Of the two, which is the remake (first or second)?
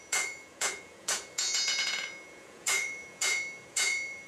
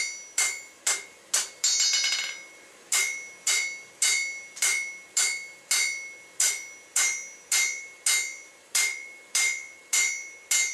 first